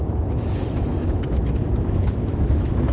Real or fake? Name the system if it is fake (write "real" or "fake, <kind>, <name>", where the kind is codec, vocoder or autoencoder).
fake, autoencoder, DAC-VAE